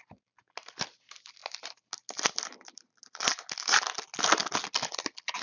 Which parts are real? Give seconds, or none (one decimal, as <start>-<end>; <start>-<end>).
0.0-5.4